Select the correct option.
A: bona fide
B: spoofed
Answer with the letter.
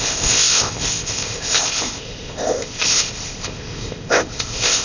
B